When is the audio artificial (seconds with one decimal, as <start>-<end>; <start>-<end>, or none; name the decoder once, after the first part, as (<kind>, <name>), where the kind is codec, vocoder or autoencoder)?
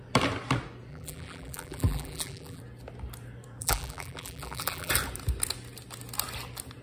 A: 0.9-2.6 (vocoder, BigVGAN v2); 3.6-4.9